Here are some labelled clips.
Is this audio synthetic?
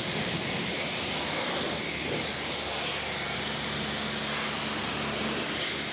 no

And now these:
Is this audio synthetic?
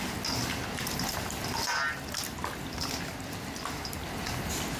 no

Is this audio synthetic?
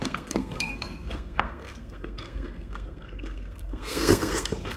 yes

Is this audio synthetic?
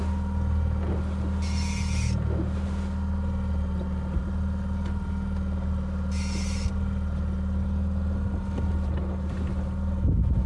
no